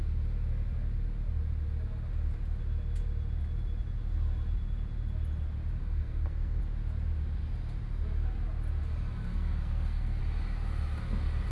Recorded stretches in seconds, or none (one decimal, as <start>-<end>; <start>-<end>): 0.0-5.8; 6.6-9.2; 10.2-11.5

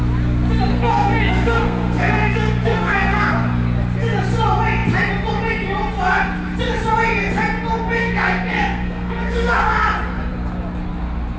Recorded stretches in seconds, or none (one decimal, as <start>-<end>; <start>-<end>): 0.0-0.7; 3.3-8.0; 9.7-11.4